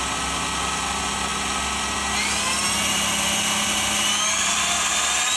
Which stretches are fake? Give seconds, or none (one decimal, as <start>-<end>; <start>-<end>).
none

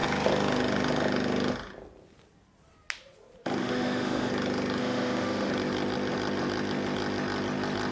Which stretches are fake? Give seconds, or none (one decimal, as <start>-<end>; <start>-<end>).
3.6-4.3; 4.8-5.5

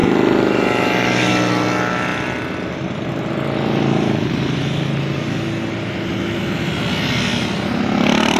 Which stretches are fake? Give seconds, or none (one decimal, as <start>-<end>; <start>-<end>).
none

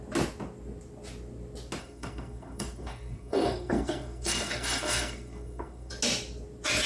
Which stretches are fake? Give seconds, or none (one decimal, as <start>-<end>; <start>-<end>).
1.8-5.9